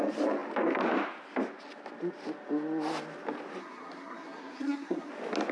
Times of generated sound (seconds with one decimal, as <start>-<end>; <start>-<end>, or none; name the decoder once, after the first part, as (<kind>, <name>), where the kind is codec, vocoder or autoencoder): 3.6-5.1 (codec, SNAC)